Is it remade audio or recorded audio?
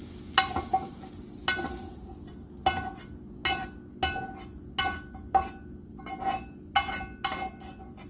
recorded